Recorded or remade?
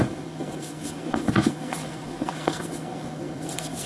remade